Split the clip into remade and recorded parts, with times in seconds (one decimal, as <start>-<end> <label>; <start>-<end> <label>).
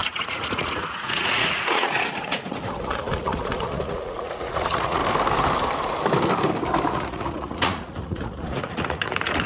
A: 0.0-5.0 remade; 5.0-6.9 recorded; 6.9-9.5 remade